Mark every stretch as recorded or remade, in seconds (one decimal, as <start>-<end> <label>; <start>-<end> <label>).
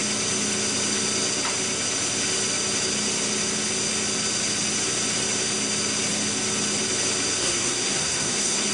0.0-7.4 recorded; 7.4-8.7 remade